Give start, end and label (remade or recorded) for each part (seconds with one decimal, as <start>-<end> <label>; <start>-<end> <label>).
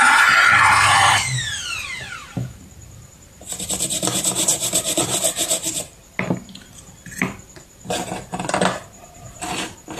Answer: 0.0-6.0 remade; 6.0-8.8 recorded; 8.8-10.0 remade